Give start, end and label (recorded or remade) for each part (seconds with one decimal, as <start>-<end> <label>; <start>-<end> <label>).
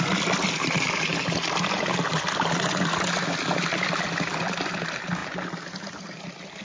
0.0-6.6 recorded